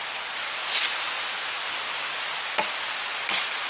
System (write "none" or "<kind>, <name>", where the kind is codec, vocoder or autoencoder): none